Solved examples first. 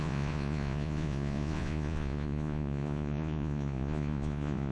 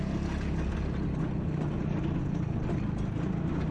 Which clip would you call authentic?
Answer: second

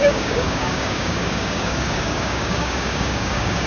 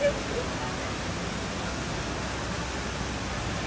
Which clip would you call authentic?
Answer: second